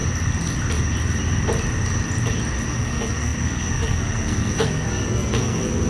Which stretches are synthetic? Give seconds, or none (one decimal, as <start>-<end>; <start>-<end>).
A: 2.7-5.9